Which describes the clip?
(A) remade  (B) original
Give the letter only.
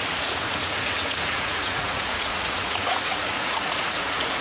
A